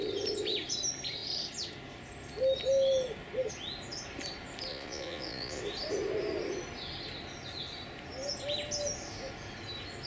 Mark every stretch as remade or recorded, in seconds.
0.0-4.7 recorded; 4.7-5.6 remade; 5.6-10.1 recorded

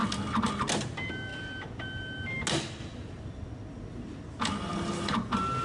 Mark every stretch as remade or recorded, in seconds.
0.0-5.6 recorded

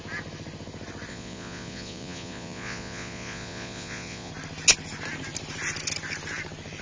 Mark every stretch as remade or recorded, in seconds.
0.0-1.1 recorded; 1.1-4.3 remade; 4.3-6.8 recorded

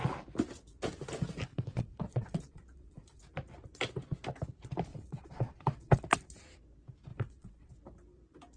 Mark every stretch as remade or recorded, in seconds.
0.0-1.5 recorded; 1.5-3.2 remade; 3.2-4.9 recorded; 4.9-6.0 remade; 6.0-7.1 recorded; 7.1-7.7 remade; 7.7-8.6 recorded

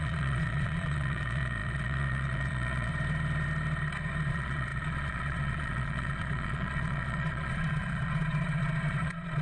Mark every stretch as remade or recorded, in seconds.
0.0-2.9 remade; 2.9-4.3 recorded; 4.3-9.4 remade

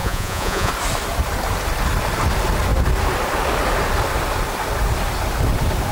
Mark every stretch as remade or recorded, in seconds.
0.0-0.7 remade; 0.7-5.9 recorded

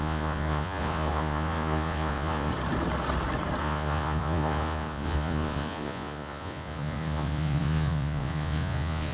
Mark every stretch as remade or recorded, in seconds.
0.0-2.5 remade; 2.5-3.6 recorded; 3.6-9.1 remade

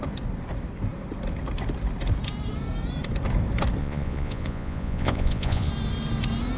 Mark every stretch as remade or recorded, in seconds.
0.0-3.8 recorded; 3.8-5.7 remade; 5.7-6.6 recorded